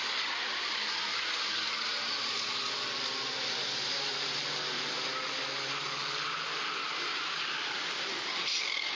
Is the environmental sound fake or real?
real